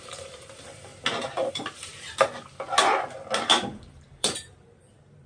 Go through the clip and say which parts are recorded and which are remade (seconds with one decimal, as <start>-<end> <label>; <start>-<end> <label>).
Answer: 0.0-0.9 remade; 0.9-1.5 recorded; 1.5-1.9 remade; 1.9-3.7 recorded; 3.7-5.3 remade